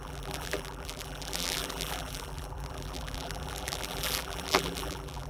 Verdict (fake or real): fake